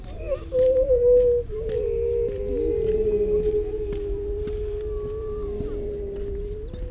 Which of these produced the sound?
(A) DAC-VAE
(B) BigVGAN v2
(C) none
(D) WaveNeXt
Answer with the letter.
C